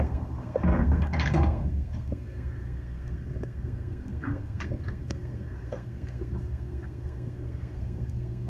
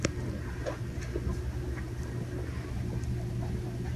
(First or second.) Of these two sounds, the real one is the second